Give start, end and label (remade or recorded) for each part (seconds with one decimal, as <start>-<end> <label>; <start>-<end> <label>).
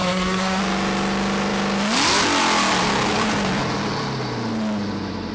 0.0-0.6 remade; 0.6-5.3 recorded